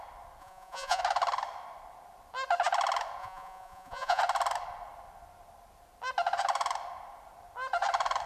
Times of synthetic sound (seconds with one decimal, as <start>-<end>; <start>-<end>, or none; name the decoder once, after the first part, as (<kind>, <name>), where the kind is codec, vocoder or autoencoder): 0.4-1.0 (vocoder, Vocos); 3.2-4.2